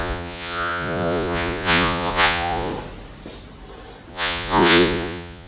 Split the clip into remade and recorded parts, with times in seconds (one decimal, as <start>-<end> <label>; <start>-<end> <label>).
0.0-2.7 remade; 2.7-4.1 recorded; 4.1-5.5 remade